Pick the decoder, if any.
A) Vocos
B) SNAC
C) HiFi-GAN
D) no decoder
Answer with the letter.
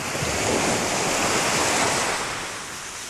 D